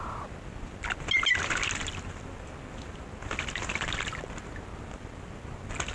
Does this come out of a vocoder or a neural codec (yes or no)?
no